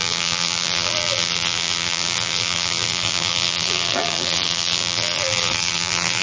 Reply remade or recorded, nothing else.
remade